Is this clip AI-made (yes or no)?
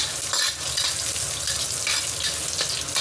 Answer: no